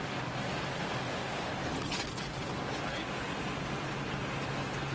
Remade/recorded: recorded